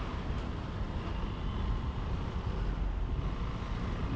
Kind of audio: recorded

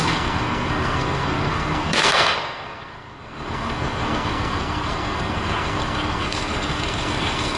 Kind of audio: remade